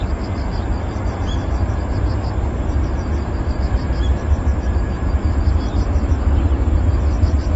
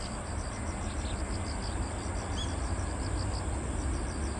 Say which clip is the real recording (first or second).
second